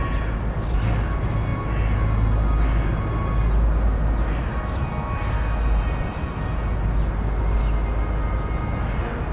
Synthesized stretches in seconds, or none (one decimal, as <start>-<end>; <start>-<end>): none